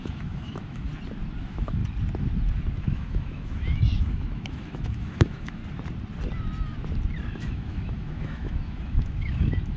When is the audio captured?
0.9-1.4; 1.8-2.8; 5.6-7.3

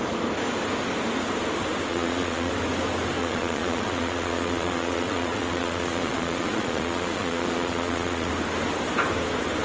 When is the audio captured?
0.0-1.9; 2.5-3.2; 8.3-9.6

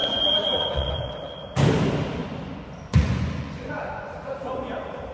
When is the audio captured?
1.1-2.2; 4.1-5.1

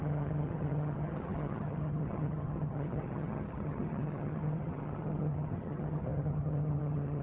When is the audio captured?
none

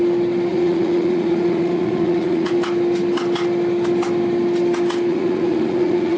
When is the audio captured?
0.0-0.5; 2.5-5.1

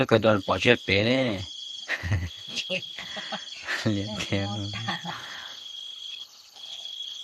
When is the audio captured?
1.4-1.9; 3.1-4.9

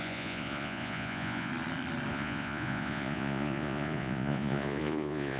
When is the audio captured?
1.5-2.1